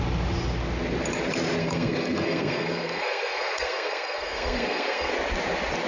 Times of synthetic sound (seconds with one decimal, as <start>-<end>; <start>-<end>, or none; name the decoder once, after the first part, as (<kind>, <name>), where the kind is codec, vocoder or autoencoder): 1.6-5.1 (codec, SNAC)